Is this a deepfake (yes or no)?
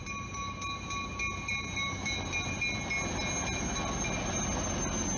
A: no